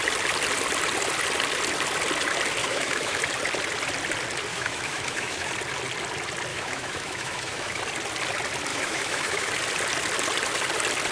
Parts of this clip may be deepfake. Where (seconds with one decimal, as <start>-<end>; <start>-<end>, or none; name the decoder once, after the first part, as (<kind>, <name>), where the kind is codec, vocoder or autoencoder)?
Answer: 2.6-3.2 (autoencoder, DAC-VAE); 4.5-5.5; 6.5-7.8; 8.7-9.5